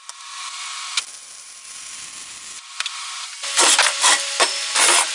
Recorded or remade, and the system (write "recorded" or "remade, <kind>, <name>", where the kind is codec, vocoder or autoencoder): recorded